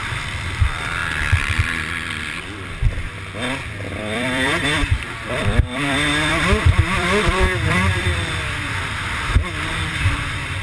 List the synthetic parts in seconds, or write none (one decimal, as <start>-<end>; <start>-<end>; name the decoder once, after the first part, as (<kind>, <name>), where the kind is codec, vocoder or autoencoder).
0.0-1.0 (vocoder, BigVGAN v2); 3.9-10.6